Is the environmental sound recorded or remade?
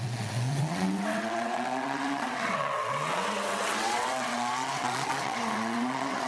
remade